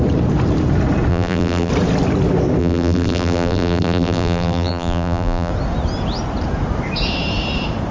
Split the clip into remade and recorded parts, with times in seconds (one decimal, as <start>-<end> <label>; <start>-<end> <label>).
0.0-1.1 recorded; 1.1-1.7 remade; 1.7-2.6 recorded; 2.6-5.5 remade; 5.5-7.9 recorded